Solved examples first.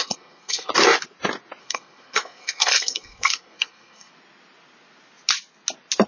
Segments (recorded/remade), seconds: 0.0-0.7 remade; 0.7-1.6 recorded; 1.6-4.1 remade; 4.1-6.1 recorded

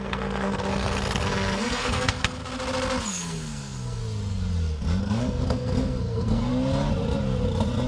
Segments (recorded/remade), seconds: 0.0-2.4 remade; 2.4-3.1 recorded; 3.1-4.0 remade; 4.0-5.0 recorded; 5.0-6.5 remade; 6.5-7.9 recorded